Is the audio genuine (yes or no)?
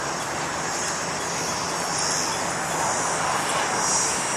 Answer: yes